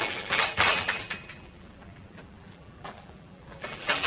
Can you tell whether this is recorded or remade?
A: remade